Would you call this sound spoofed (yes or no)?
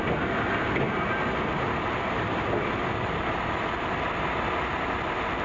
no